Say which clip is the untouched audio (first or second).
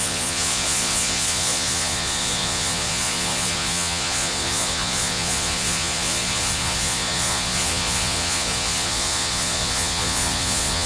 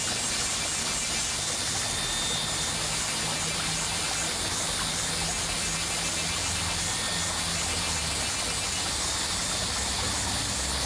second